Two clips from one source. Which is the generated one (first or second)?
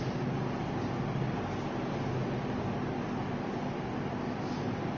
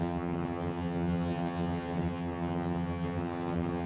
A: second